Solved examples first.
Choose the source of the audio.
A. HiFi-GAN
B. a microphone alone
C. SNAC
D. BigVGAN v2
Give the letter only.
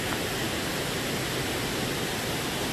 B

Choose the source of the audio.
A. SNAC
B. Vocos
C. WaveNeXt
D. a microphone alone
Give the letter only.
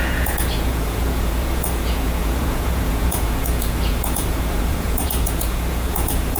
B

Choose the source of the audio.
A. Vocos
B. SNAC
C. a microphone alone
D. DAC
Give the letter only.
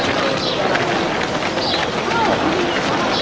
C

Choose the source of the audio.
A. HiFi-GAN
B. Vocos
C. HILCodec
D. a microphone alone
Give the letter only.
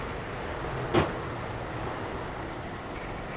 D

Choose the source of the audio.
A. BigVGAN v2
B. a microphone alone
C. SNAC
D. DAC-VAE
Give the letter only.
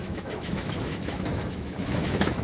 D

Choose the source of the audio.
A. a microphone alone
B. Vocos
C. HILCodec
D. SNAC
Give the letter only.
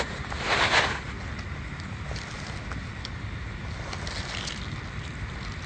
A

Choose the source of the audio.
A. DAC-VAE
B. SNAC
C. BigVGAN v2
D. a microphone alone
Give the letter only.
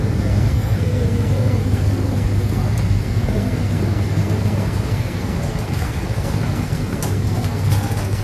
B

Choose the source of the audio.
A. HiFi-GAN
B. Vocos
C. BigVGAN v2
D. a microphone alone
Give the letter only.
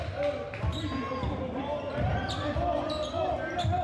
D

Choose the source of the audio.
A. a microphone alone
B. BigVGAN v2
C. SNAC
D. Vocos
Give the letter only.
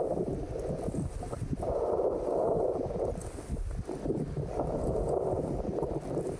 A